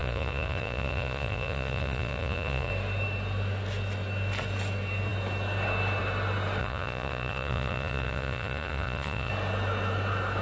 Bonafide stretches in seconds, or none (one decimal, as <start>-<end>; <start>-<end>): 2.7-6.6; 9.3-10.4